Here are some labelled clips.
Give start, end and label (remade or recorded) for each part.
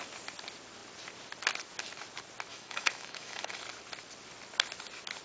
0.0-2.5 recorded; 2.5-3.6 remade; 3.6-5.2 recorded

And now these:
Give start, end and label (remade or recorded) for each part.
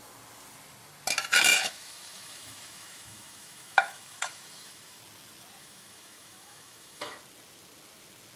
0.0-1.5 recorded; 1.5-5.0 remade; 5.0-5.6 recorded; 5.6-7.2 remade; 7.2-8.4 recorded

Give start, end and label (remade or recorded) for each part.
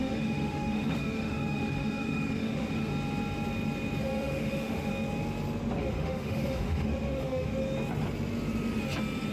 0.0-2.9 remade; 2.9-4.0 recorded; 4.0-4.9 remade; 4.9-5.8 recorded; 5.8-7.6 remade; 7.6-9.3 recorded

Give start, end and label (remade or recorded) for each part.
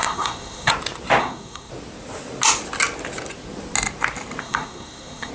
0.0-0.7 remade; 0.7-1.2 recorded; 1.2-1.7 remade; 1.7-4.4 recorded; 4.4-5.3 remade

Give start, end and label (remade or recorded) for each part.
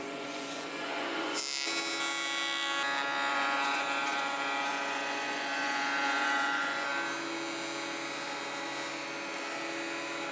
0.0-1.4 remade; 1.4-3.3 recorded; 3.3-6.9 remade; 6.9-10.3 recorded